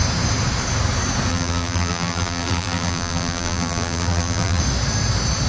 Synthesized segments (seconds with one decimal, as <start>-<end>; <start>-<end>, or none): 1.3-4.6